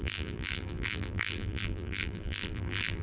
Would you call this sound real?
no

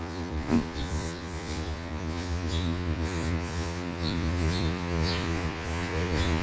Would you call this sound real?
no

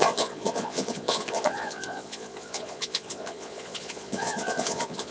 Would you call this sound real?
no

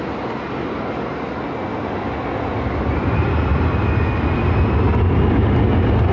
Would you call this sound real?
yes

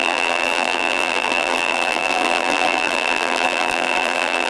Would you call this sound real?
no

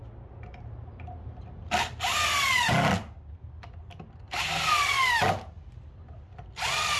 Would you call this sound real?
yes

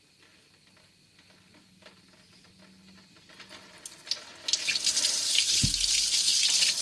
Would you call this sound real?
yes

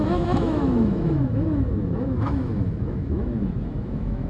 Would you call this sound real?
no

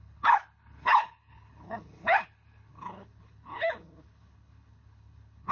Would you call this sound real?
no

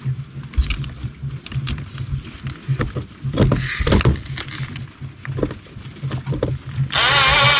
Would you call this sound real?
yes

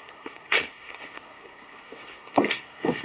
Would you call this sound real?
no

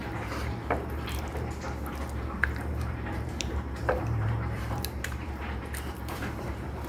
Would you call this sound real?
no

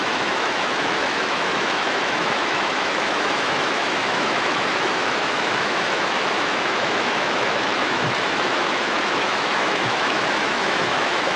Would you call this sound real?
no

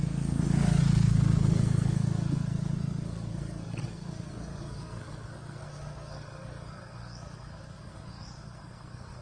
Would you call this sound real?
no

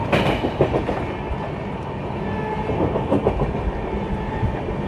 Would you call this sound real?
yes